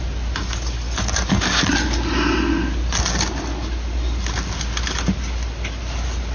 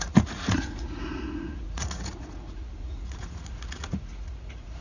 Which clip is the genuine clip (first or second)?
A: first